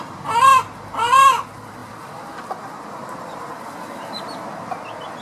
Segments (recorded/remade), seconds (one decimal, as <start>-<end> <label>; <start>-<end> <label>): 0.0-5.2 recorded